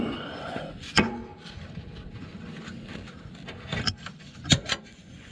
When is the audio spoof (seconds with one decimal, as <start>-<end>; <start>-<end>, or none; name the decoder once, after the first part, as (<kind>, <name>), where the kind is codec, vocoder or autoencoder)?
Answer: 0.0-1.2 (vocoder, Vocos); 4.2-5.3